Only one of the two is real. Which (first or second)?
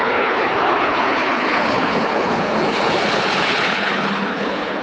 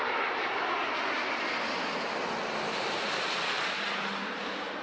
second